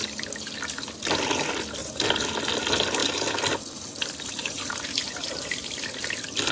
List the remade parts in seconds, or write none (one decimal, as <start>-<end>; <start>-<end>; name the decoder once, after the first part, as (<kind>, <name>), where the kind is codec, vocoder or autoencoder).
1.8-2.3 (vocoder, BigVGAN v2); 4.4-5.3